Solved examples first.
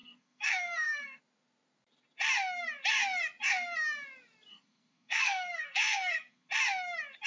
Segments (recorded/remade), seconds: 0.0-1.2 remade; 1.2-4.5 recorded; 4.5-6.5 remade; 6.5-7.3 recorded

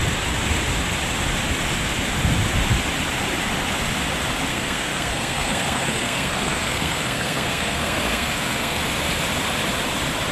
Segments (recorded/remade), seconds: 0.0-4.5 recorded; 4.5-8.8 remade; 8.8-10.3 recorded

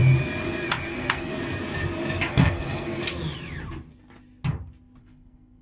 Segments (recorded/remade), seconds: 0.0-0.9 recorded; 0.9-1.3 remade; 1.3-2.3 recorded; 2.3-3.0 remade; 3.0-5.0 recorded; 5.0-5.6 remade

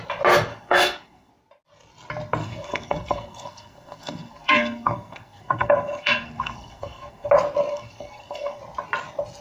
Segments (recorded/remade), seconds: 0.0-0.5 recorded; 0.5-1.3 remade; 1.3-2.4 recorded; 2.4-7.3 remade; 7.3-7.7 recorded; 7.7-8.6 remade; 8.6-9.4 recorded

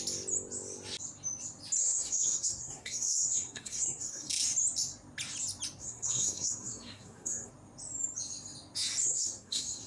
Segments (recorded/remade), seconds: 0.0-1.8 recorded; 1.8-4.3 remade; 4.3-5.8 recorded; 5.8-7.5 remade; 7.5-9.0 recorded; 9.0-9.9 remade